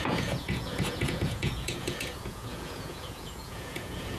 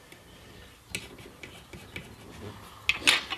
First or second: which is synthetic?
first